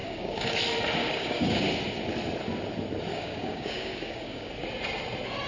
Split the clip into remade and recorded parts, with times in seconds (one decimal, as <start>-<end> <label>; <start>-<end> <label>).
0.0-0.6 remade; 0.6-1.0 recorded; 1.0-1.6 remade; 1.6-3.1 recorded; 3.1-4.5 remade; 4.5-5.5 recorded